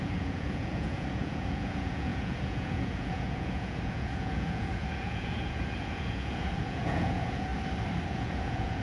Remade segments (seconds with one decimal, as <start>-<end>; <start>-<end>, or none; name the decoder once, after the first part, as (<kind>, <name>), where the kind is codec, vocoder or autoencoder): 0.0-7.5 (vocoder, Vocos); 8.1-8.8